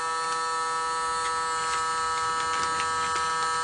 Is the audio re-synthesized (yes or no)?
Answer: no